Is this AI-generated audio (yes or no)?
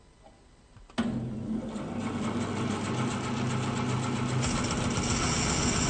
no